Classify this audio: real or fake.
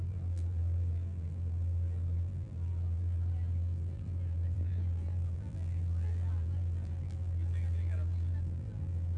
fake